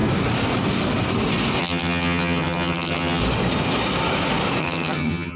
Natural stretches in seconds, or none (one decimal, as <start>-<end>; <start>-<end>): 0.0-1.6; 3.2-4.6